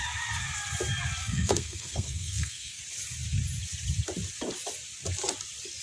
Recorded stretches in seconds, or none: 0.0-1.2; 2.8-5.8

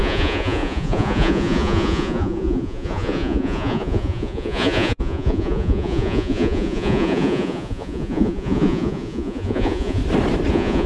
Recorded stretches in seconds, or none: 10.0-10.5